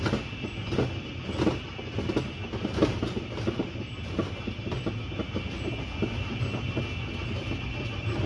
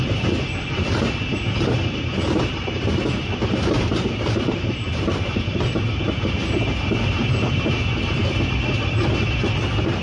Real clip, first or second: first